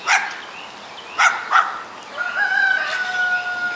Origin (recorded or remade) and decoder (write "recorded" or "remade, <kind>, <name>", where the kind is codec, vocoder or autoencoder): recorded